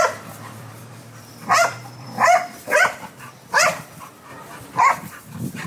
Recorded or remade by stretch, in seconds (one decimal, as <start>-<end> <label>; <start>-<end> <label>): 0.0-4.3 remade; 4.3-4.8 recorded; 4.8-5.7 remade